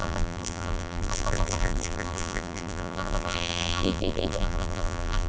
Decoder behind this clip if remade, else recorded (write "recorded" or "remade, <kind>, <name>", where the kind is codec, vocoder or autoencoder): remade, vocoder, BigVGAN v2